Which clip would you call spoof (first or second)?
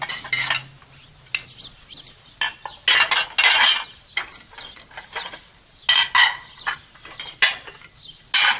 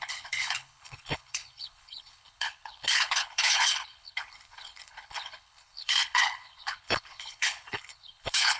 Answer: second